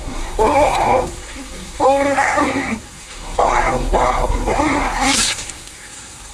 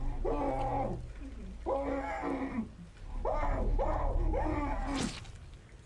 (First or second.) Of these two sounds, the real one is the second